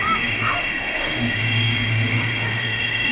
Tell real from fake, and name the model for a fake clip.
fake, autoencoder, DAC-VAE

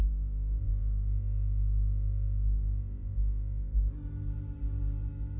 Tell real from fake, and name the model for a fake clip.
real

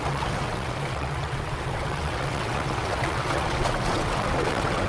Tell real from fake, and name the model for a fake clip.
fake, vocoder, WaveNeXt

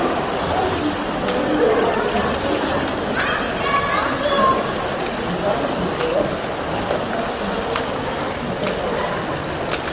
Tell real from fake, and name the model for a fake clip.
real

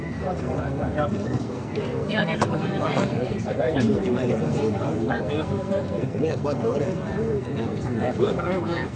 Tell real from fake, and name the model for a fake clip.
fake, codec, SNAC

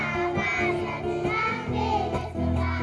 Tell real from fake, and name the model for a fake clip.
real